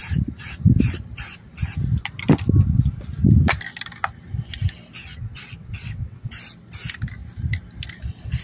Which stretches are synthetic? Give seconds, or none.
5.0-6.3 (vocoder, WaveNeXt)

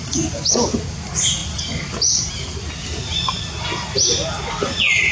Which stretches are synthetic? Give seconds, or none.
none

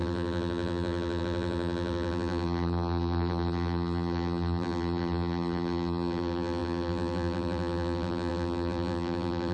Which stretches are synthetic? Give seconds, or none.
0.0-9.5 (vocoder, BigVGAN v2)

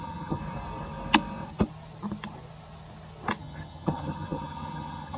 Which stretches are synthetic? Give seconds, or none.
0.0-0.4 (vocoder, HiFi-GAN); 3.4-5.2

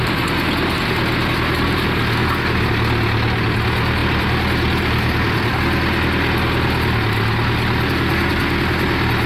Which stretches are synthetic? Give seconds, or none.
4.0-5.6 (vocoder, BigVGAN v2)

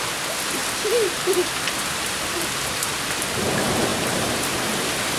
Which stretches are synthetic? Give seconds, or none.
0.6-2.9 (vocoder, BigVGAN v2); 3.9-5.2

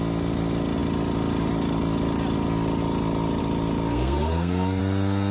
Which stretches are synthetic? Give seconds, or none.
3.9-4.8 (codec, SNAC)

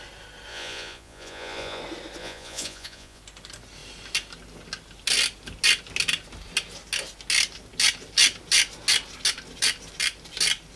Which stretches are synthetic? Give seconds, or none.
0.5-1.8 (vocoder, Vocos); 2.2-3.2